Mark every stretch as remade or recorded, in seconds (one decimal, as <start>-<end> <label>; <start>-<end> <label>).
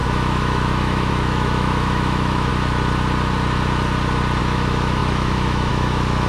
0.0-2.5 remade; 2.5-4.4 recorded; 4.4-6.3 remade